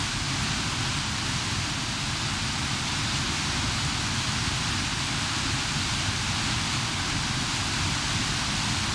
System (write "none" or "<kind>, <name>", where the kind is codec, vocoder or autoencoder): none